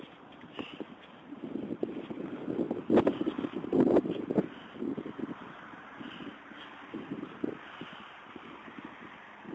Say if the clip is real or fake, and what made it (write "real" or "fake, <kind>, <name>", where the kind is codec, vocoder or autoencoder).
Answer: real